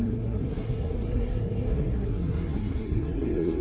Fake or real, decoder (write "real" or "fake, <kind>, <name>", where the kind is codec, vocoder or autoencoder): fake, codec, SNAC